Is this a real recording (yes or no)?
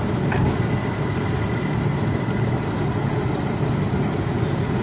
yes